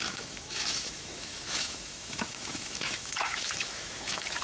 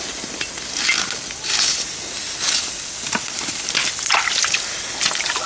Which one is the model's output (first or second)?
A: first